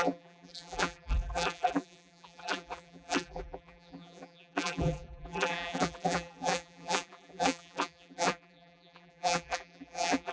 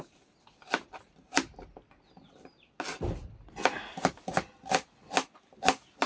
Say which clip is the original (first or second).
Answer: second